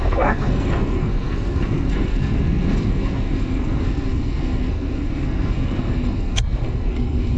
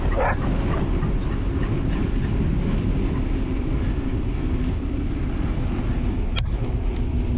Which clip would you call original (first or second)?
second